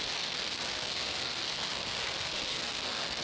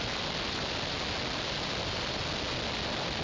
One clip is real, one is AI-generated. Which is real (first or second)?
second